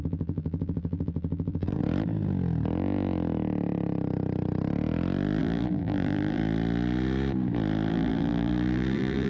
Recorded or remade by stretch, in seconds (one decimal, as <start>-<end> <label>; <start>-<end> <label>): 0.0-1.8 remade; 1.8-5.4 recorded; 5.4-6.4 remade; 6.4-7.9 recorded; 7.9-9.3 remade